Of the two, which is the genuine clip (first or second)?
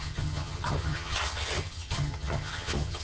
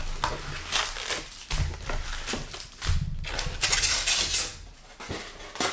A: second